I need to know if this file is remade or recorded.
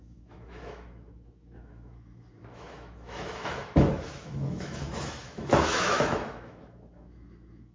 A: remade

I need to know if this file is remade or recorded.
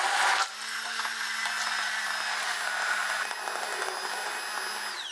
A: recorded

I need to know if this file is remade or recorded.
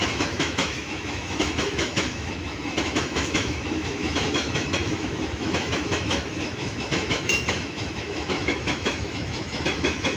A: remade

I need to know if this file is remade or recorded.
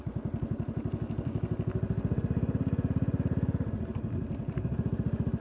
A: recorded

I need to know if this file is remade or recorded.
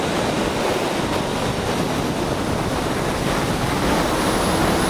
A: recorded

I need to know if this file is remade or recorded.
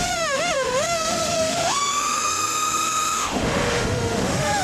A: remade